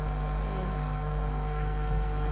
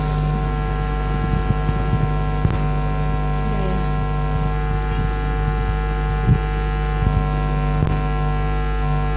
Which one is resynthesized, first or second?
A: first